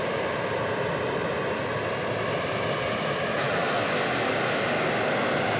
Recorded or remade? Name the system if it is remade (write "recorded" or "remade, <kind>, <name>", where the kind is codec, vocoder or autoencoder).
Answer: recorded